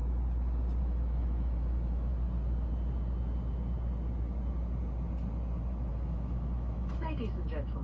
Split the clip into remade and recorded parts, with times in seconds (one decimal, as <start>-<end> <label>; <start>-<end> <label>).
0.0-0.8 recorded; 0.8-2.1 remade; 2.1-5.9 recorded; 5.9-7.8 remade